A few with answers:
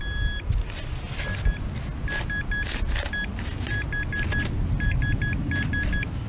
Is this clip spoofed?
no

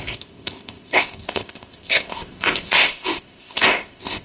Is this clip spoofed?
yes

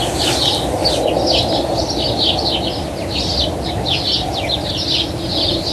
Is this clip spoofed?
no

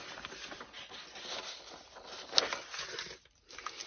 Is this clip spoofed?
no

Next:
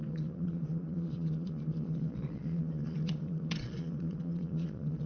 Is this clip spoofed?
yes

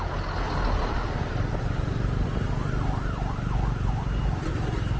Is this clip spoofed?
no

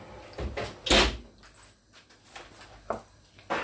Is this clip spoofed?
no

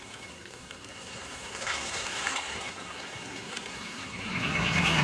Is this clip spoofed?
yes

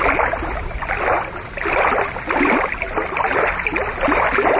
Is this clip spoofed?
no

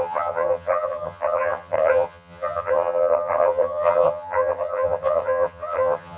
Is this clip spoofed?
yes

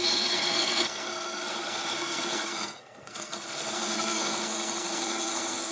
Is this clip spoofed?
yes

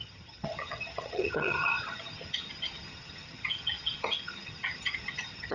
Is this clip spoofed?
yes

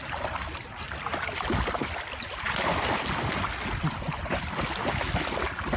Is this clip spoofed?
no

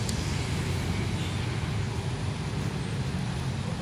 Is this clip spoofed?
no